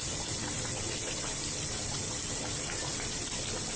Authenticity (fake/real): real